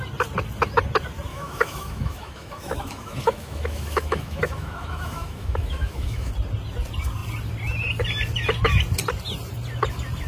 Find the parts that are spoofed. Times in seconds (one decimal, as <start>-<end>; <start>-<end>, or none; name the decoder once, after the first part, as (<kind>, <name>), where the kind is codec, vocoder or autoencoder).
1.3-6.3 (autoencoder, DAC-VAE)